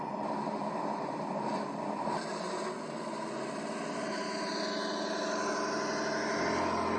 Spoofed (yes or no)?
no